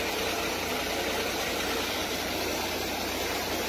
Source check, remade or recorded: recorded